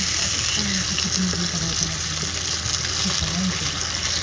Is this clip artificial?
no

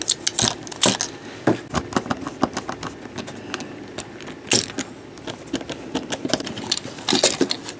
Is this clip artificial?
no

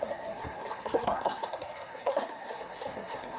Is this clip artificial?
yes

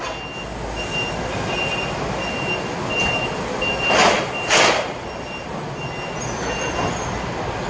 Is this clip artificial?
no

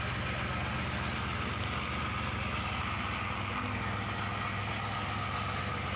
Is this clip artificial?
no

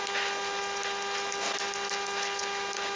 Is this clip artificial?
no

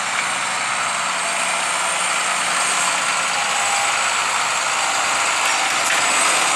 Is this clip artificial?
no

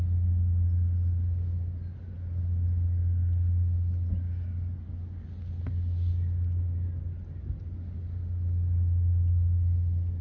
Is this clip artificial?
no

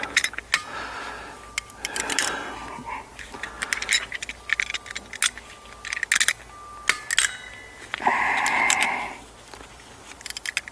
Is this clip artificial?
no